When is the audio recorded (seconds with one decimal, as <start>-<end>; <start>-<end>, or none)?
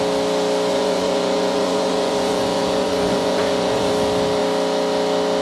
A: 0.0-0.7; 3.9-5.4